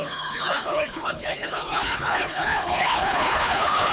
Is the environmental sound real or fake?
fake